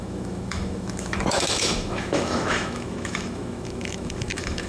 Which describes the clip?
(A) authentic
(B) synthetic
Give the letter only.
B